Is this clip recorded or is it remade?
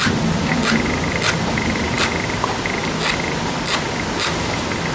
recorded